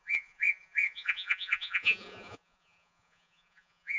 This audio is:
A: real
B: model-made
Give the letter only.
B